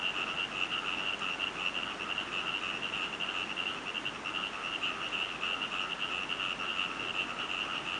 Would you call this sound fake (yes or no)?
no